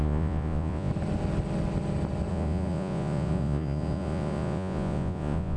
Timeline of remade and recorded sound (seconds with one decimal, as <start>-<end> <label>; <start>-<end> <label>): 0.0-0.9 remade; 0.9-2.3 recorded; 2.3-5.6 remade